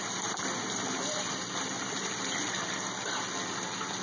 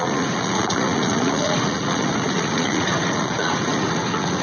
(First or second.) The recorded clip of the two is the first